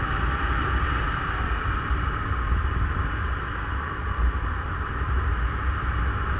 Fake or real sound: real